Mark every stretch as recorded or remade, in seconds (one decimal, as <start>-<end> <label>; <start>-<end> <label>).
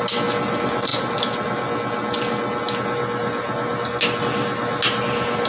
0.0-5.5 recorded